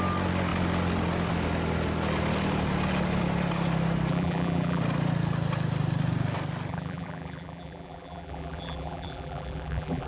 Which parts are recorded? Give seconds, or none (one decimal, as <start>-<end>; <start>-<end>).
0.0-4.1; 4.8-6.7

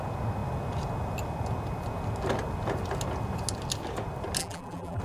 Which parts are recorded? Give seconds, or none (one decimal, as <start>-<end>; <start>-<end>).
0.0-4.4

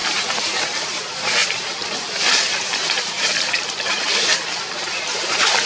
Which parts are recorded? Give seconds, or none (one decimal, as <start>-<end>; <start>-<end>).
0.0-0.6

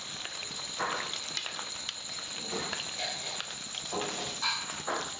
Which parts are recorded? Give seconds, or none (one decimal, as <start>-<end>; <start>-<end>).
0.0-0.4; 3.5-5.2

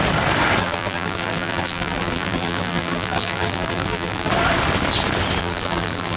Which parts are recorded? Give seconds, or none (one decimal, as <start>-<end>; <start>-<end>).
0.0-0.6; 4.3-5.4

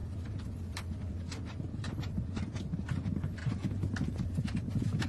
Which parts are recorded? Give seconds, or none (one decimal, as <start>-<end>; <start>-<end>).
3.0-5.1